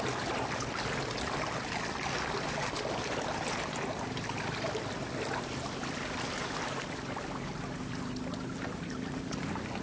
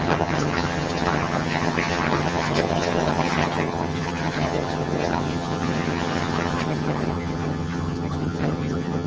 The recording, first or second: first